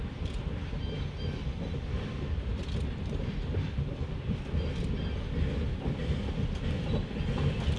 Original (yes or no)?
yes